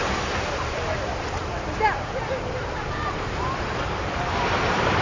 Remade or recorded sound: remade